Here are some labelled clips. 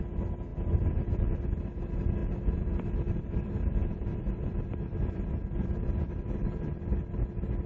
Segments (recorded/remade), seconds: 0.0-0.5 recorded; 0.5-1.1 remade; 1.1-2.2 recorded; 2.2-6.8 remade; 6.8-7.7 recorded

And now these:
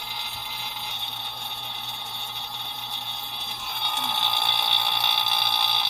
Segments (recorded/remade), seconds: 0.0-0.4 recorded; 0.4-3.9 remade; 3.9-5.9 recorded

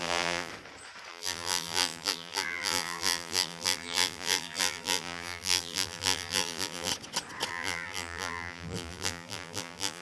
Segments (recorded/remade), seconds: 0.0-0.5 remade; 0.5-1.1 recorded; 1.1-6.9 remade; 6.9-7.5 recorded; 7.5-10.0 remade

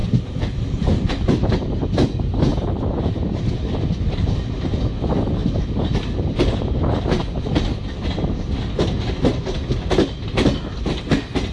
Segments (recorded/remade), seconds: 0.0-1.1 remade; 1.1-2.5 recorded; 2.5-3.5 remade; 3.5-5.4 recorded; 5.4-7.5 remade; 7.5-11.5 recorded

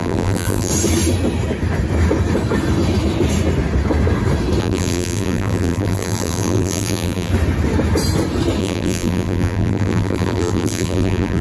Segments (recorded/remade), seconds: 0.0-0.7 remade; 0.7-4.6 recorded; 4.6-7.3 remade; 7.3-8.6 recorded; 8.6-11.4 remade

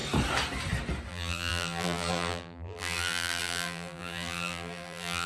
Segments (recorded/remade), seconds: 0.0-1.1 recorded; 1.1-5.3 remade

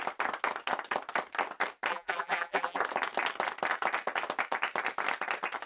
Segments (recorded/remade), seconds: 0.0-1.9 recorded; 1.9-2.8 remade; 2.8-5.7 recorded

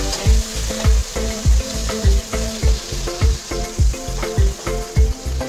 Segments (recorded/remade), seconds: 0.0-1.0 recorded; 1.0-3.6 remade; 3.6-5.5 recorded